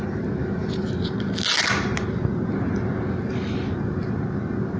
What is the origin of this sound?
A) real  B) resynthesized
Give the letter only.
A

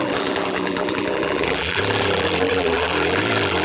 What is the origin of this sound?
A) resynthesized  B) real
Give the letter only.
A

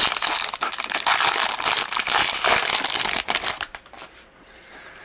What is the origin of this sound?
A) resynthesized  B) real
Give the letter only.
B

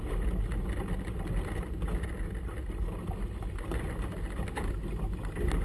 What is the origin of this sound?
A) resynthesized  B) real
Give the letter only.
B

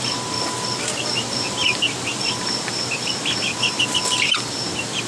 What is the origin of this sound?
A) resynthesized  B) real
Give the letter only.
B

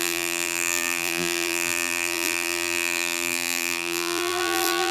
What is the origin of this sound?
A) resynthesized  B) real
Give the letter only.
A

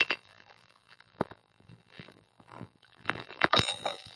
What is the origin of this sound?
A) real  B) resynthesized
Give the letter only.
B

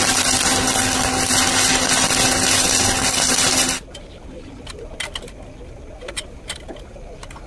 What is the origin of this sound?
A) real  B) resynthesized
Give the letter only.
A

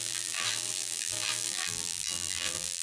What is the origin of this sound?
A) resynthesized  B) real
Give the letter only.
A